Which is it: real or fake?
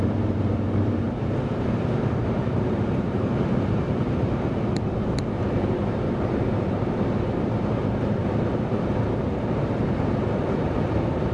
fake